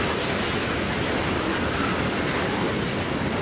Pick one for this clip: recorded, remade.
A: recorded